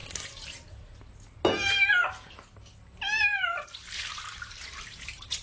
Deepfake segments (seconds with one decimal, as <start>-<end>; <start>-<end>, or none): 3.2-5.4